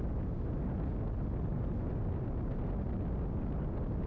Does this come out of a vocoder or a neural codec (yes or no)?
no